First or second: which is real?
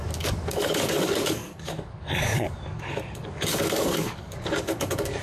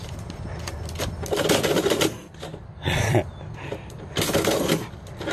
second